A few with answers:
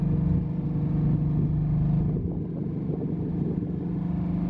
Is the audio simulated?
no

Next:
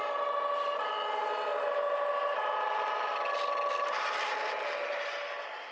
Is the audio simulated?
no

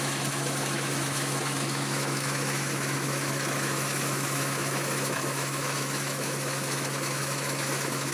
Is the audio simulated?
yes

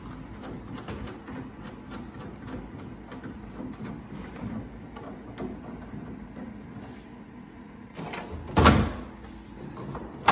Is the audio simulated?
no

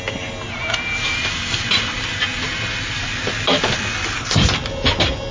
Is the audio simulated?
no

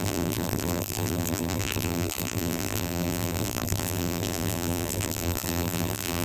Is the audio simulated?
yes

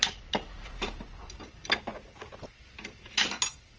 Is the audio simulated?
no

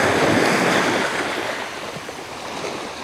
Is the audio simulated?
no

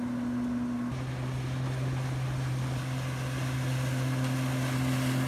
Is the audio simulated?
no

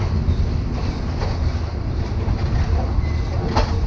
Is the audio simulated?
no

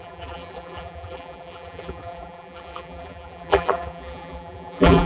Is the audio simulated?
yes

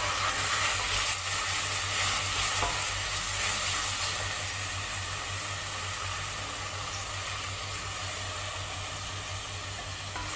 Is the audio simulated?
no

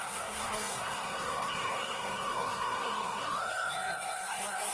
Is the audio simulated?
yes